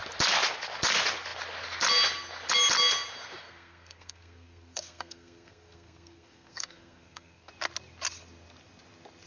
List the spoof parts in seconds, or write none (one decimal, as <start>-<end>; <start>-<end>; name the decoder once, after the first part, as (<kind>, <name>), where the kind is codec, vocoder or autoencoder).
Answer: 3.4-7.5 (codec, SNAC)